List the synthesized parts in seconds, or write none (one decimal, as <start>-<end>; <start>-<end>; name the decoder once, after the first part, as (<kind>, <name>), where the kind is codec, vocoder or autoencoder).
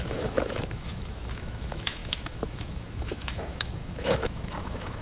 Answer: 0.0-5.0 (autoencoder, DAC-VAE)